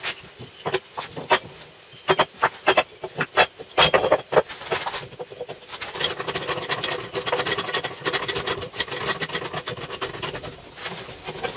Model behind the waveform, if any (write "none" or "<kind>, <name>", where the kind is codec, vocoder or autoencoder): none